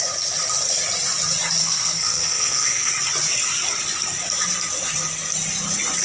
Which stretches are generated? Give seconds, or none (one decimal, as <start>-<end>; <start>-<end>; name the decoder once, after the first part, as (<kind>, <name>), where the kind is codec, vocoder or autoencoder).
1.6-2.9 (codec, SNAC)